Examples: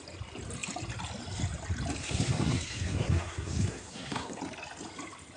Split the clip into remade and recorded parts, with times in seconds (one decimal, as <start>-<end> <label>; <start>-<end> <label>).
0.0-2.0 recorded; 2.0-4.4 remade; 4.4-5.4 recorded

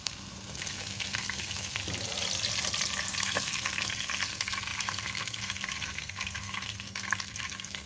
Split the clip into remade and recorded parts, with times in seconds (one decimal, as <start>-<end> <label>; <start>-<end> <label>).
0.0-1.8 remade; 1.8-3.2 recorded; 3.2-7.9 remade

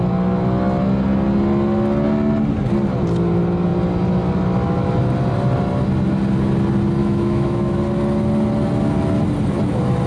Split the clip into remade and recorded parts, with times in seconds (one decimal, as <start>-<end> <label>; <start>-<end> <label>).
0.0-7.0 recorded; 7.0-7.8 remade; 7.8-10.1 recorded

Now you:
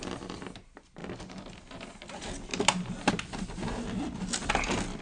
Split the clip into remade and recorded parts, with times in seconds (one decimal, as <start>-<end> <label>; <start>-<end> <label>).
0.0-5.0 recorded

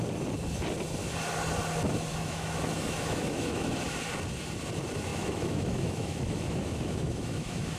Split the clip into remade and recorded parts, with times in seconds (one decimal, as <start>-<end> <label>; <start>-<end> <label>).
0.0-2.1 recorded; 2.1-3.7 remade; 3.7-5.1 recorded; 5.1-7.8 remade

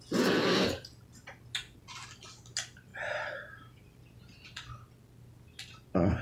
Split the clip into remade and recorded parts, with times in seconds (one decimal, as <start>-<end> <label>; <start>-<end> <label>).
0.0-6.2 recorded